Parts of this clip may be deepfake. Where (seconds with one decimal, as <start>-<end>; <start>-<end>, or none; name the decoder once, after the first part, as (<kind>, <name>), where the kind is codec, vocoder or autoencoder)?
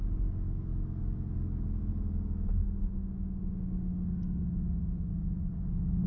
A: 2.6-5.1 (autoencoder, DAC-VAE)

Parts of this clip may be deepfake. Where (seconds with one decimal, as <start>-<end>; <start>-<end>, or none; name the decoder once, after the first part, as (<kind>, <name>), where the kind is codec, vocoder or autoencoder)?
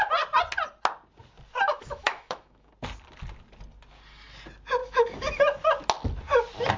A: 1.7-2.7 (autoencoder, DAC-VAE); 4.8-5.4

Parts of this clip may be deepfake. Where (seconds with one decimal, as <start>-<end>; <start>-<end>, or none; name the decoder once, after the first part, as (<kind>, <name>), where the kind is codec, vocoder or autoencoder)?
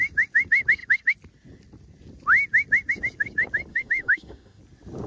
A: 3.7-4.6 (autoencoder, DAC-VAE)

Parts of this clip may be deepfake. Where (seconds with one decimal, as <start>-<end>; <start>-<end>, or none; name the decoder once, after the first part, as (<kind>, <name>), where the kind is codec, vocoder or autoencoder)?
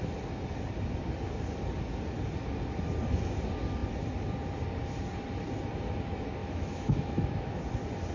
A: 6.4-7.6 (autoencoder, DAC-VAE)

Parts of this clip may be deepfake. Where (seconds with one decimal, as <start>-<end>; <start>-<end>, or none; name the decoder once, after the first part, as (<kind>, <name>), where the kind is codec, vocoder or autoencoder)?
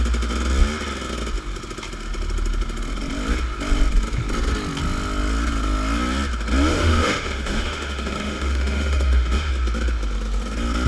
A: 6.7-9.5 (autoencoder, DAC-VAE)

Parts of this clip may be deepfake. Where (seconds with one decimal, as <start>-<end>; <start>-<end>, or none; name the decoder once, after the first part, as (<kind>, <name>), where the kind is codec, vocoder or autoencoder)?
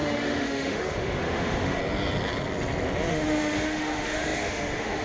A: 0.0-1.8 (autoencoder, DAC-VAE); 3.1-5.0